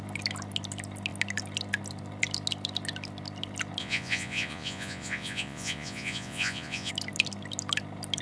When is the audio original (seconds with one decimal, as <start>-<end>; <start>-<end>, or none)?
0.0-3.8; 6.9-8.2